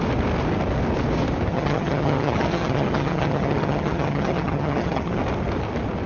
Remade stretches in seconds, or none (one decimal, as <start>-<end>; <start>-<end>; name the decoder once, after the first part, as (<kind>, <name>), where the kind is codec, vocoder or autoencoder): 1.5-5.2 (vocoder, HiFi-GAN)